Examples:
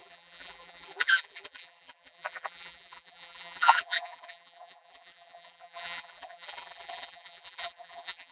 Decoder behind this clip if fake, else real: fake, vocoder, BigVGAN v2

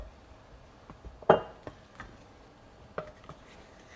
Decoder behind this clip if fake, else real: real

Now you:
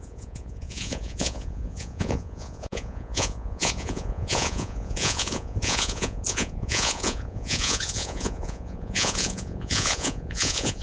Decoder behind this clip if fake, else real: fake, vocoder, Vocos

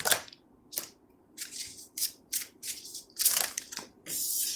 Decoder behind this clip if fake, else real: fake, vocoder, BigVGAN v2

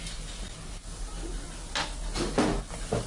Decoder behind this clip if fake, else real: real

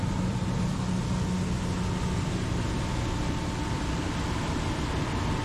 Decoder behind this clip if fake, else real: real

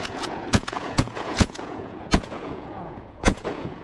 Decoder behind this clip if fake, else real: fake, vocoder, Vocos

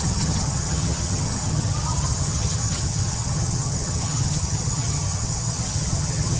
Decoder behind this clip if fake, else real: fake, vocoder, HiFi-GAN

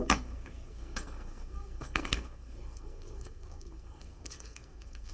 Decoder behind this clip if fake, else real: fake, codec, SNAC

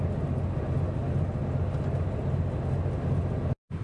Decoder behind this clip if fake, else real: real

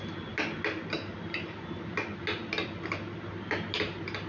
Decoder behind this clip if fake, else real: real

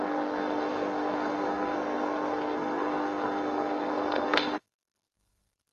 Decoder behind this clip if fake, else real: fake, codec, SNAC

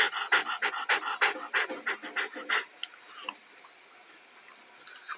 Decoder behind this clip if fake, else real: real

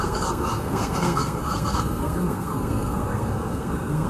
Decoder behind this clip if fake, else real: fake, codec, SNAC